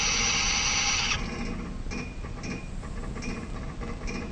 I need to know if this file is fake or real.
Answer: real